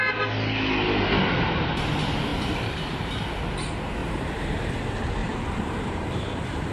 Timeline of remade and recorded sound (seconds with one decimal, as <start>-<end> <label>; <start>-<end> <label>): 0.0-2.3 recorded; 2.3-3.4 remade; 3.4-4.0 recorded; 4.0-4.7 remade; 4.7-5.2 recorded; 5.2-6.7 remade